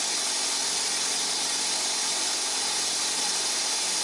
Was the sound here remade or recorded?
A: recorded